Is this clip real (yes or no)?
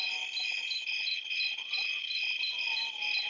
yes